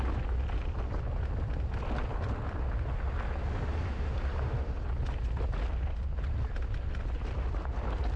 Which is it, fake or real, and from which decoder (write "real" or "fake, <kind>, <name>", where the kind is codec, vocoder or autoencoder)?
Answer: real